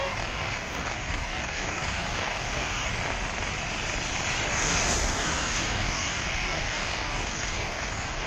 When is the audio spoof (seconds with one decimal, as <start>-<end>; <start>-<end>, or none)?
0.0-2.9; 4.5-8.3